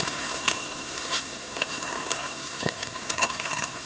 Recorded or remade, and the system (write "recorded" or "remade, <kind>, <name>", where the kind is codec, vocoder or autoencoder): remade, codec, SNAC